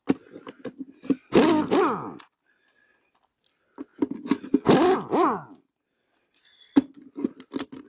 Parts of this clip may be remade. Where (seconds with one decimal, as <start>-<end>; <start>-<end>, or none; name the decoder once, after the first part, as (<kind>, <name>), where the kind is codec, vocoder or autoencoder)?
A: none